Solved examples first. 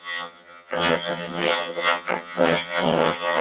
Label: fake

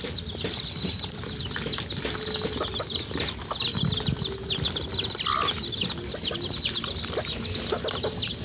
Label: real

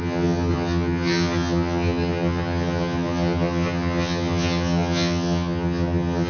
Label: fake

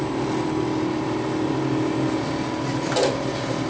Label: real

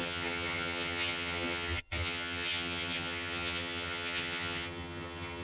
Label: fake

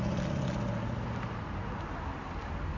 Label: real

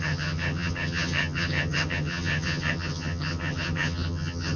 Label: fake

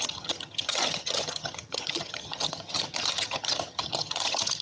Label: fake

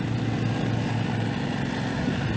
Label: real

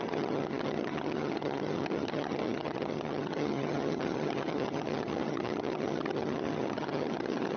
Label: fake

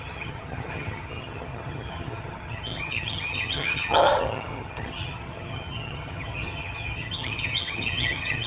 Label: fake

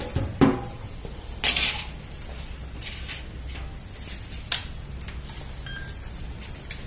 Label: real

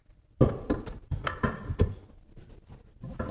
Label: real